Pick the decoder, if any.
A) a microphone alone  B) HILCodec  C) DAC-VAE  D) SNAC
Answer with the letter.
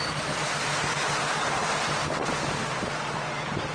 A